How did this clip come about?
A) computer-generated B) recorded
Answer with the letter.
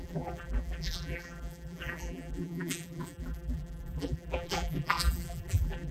A